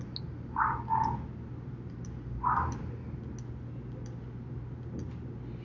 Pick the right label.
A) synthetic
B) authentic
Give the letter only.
B